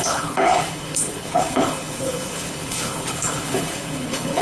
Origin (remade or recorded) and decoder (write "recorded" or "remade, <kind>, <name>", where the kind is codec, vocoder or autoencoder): remade, codec, HILCodec